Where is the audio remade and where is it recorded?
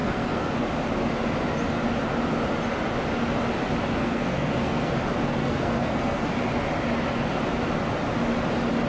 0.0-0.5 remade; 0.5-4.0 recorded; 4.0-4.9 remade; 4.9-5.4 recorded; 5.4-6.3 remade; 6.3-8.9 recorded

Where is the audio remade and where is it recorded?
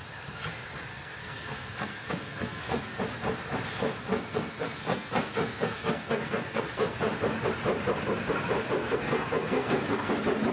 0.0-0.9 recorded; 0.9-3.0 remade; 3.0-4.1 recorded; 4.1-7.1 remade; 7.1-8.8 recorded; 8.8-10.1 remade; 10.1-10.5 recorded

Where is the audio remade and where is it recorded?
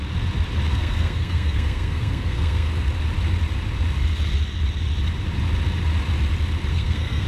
0.0-0.7 recorded; 0.7-2.7 remade; 2.7-6.7 recorded; 6.7-7.3 remade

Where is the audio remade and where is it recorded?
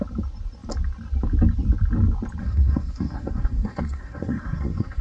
0.0-2.4 recorded; 2.4-5.0 remade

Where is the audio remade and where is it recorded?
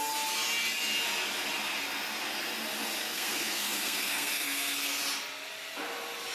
0.0-3.0 recorded; 3.0-5.0 remade; 5.0-6.3 recorded